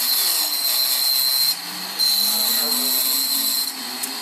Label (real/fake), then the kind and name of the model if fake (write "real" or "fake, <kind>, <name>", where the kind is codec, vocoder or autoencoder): real